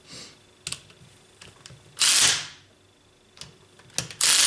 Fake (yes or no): no